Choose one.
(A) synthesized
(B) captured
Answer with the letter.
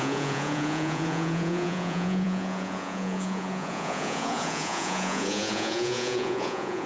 A